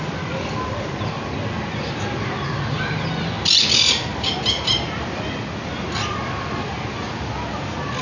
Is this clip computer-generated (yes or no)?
no